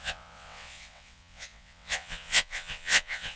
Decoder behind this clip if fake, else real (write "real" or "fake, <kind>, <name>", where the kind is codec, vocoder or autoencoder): fake, vocoder, WaveNeXt